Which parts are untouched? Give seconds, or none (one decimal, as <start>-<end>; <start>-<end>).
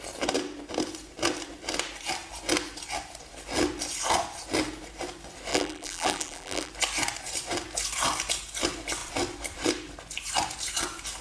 0.0-5.5; 6.7-11.2